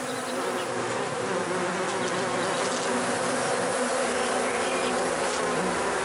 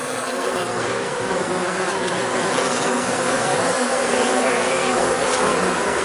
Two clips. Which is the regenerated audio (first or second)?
second